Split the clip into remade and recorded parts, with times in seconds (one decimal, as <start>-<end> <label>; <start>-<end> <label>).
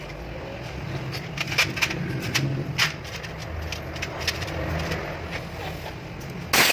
0.0-6.7 recorded